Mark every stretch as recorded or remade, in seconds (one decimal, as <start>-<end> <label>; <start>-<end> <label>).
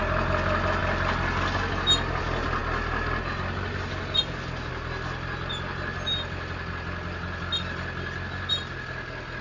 0.0-9.4 recorded